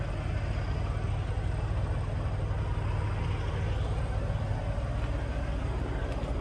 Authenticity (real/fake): real